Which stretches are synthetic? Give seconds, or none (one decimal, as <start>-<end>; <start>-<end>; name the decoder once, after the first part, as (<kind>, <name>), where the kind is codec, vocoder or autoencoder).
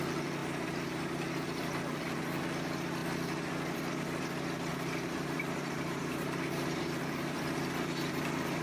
0.4-1.7 (vocoder, BigVGAN v2); 4.7-7.4